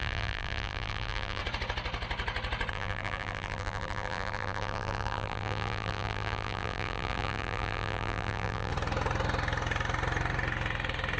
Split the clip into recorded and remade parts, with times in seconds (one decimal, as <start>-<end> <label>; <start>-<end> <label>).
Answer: 0.0-1.4 remade; 1.4-2.7 recorded; 2.7-8.7 remade; 8.7-11.2 recorded